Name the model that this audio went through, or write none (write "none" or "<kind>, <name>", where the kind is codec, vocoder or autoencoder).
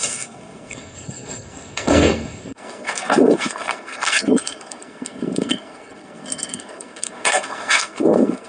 codec, SNAC